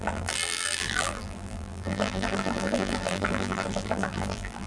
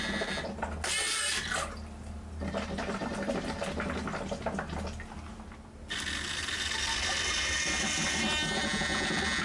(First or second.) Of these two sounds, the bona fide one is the second